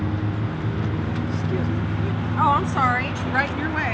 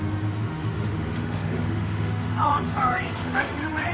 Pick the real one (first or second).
first